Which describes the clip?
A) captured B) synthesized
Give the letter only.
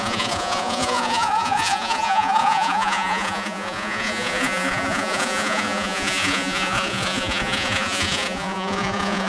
B